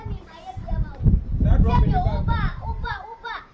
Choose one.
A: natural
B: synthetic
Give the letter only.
B